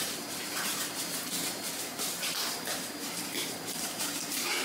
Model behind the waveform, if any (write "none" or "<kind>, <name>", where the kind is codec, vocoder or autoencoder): vocoder, BigVGAN v2